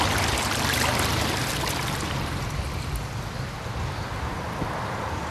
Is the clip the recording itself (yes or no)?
yes